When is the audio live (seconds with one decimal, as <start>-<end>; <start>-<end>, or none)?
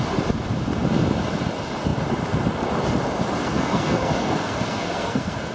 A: 0.0-3.4